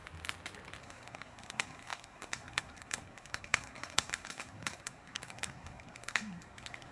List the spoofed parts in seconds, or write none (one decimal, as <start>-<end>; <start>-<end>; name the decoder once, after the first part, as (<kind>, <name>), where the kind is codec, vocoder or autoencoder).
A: 0.8-6.9 (codec, SNAC)